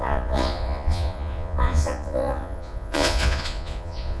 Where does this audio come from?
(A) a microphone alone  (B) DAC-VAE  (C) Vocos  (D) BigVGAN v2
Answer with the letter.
C